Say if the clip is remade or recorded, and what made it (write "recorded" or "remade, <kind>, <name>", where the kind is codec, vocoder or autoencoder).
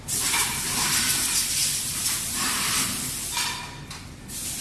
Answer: remade, vocoder, BigVGAN v2